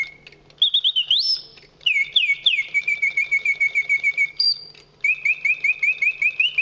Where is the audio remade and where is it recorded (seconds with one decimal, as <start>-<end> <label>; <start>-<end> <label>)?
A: 0.0-1.5 recorded; 1.5-5.0 remade; 5.0-6.6 recorded